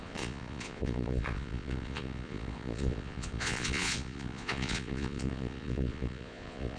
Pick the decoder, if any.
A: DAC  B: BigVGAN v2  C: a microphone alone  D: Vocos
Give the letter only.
D